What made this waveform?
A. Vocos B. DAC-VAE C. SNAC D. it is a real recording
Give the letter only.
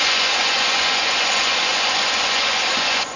A